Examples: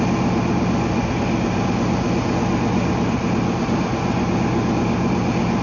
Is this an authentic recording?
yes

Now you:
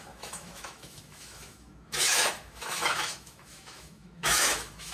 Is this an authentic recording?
no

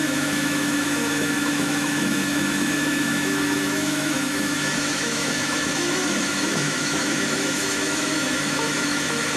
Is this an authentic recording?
no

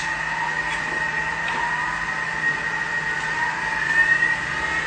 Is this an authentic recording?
yes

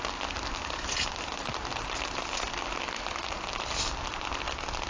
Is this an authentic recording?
yes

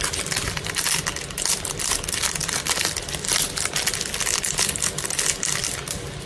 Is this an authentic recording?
yes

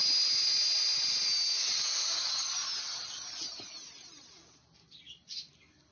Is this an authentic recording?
yes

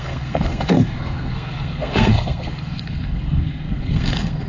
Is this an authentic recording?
no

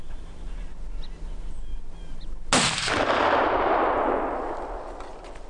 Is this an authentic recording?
yes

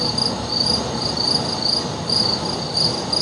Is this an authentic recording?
yes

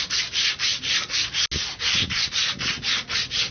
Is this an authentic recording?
yes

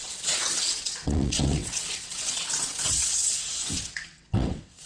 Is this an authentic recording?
no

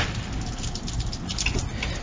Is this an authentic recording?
yes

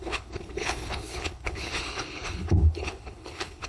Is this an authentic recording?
no